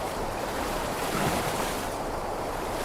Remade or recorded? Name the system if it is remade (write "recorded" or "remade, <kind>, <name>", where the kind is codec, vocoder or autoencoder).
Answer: remade, vocoder, BigVGAN v2